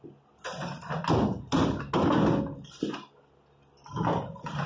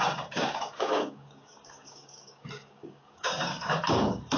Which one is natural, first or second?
first